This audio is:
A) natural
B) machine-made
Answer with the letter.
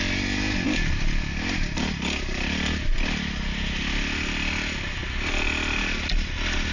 A